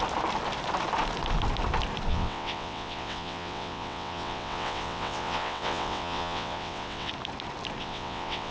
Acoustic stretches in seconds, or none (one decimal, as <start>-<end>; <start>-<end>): 0.0-2.1; 7.1-7.8